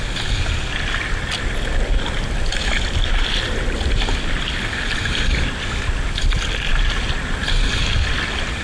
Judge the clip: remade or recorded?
recorded